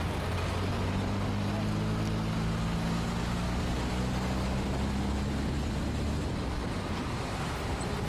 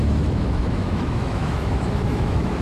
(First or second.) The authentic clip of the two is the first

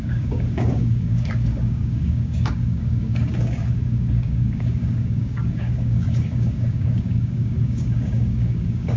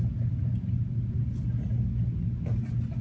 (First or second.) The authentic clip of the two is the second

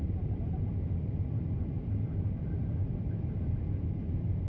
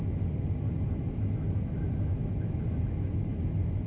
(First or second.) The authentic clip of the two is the second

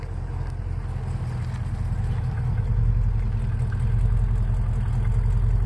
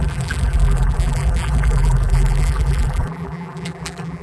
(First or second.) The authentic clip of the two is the first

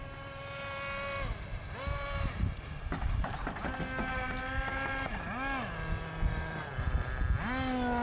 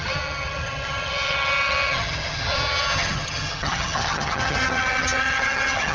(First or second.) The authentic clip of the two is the first